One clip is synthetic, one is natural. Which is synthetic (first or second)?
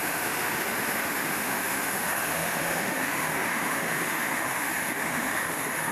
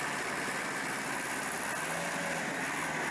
first